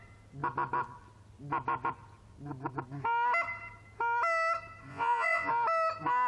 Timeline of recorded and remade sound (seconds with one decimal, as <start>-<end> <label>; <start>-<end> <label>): 0.0-4.9 recorded; 4.9-5.5 remade; 5.5-6.3 recorded